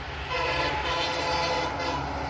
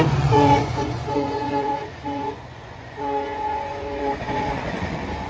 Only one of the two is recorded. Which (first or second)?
first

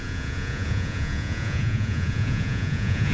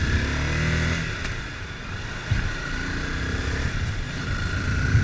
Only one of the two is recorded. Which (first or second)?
second